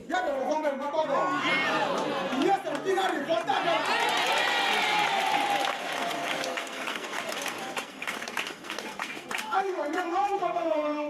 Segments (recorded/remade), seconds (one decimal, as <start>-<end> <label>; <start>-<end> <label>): 0.0-0.9 remade; 0.9-5.7 recorded; 5.7-11.1 remade